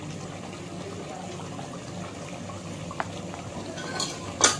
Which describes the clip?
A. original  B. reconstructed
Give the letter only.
A